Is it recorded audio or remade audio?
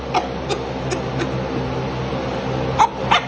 recorded